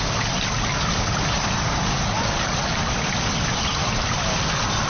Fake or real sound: real